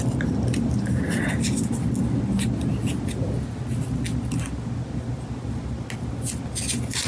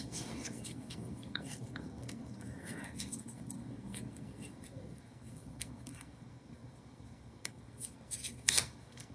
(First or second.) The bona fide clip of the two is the first